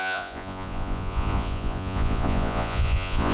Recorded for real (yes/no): no